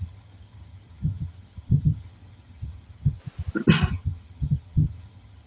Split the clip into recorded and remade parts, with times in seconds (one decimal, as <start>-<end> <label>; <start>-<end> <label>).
0.0-3.2 remade; 3.2-3.9 recorded; 3.9-5.5 remade